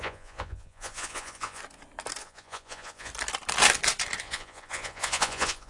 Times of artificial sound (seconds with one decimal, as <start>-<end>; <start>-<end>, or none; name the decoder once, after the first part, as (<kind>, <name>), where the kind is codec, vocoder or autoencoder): 0.0-1.6 (vocoder, Vocos); 2.2-3.1; 4.2-5.7